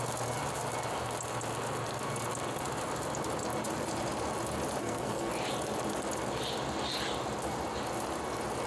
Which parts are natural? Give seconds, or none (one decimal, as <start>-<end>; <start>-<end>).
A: 0.0-4.8; 5.3-8.7